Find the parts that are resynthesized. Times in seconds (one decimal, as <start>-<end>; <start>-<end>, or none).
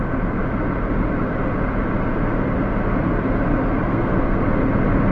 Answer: 3.9-4.4